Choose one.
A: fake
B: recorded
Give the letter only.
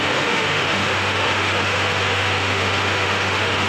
A